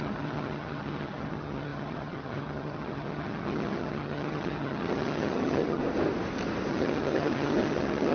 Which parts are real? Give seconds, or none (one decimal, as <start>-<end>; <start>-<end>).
5.8-6.7